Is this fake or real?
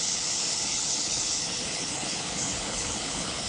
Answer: fake